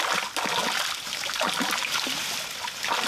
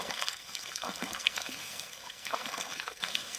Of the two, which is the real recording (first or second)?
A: first